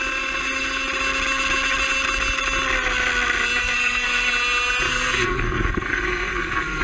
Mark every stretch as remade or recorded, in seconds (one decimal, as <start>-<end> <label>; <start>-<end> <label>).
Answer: 0.0-3.6 recorded; 3.6-4.3 remade; 4.3-4.9 recorded; 4.9-6.8 remade